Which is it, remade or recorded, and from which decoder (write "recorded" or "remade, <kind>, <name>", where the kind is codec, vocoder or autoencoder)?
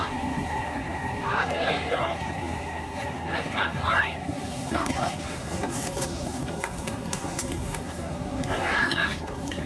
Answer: remade, codec, SNAC